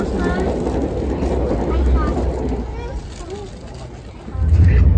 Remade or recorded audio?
recorded